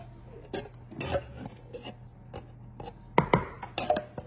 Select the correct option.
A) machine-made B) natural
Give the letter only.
B